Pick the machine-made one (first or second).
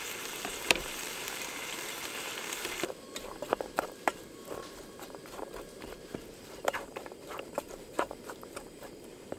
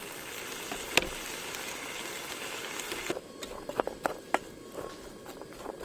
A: first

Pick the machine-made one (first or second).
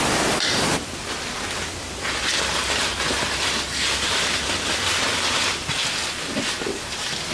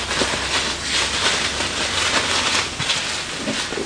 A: first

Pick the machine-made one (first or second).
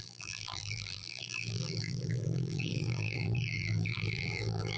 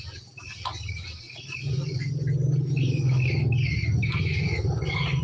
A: first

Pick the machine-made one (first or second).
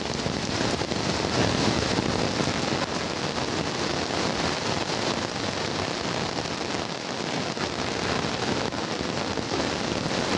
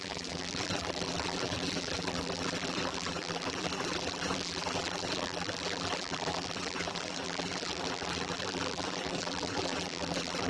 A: second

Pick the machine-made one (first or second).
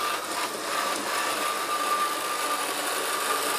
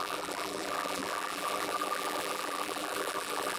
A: second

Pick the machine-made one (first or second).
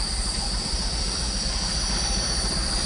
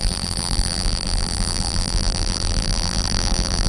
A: second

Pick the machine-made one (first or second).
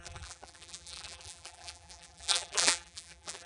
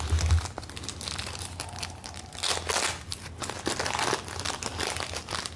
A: first